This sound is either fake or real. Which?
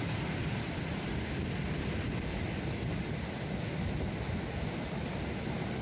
real